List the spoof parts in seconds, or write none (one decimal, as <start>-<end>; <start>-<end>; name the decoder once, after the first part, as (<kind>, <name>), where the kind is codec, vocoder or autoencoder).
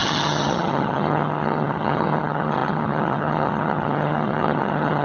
0.0-5.0 (vocoder, HiFi-GAN)